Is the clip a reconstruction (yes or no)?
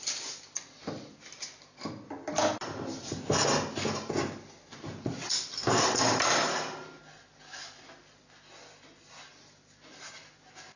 no